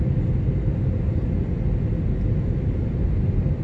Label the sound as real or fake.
real